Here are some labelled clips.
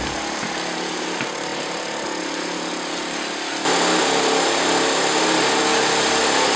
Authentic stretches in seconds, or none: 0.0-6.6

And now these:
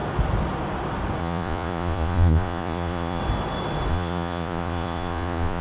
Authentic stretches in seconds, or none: 0.0-1.2; 3.2-3.9

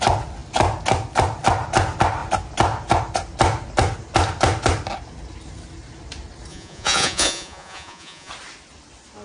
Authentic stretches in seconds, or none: 0.0-6.5; 8.3-9.2

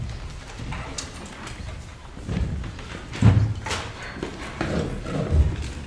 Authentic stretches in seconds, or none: 0.0-1.9; 3.3-5.9

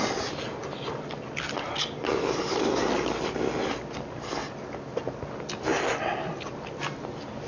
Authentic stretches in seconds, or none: 0.0-7.5

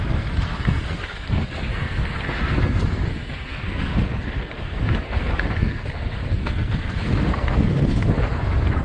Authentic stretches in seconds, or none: none